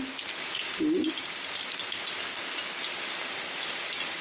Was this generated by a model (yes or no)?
no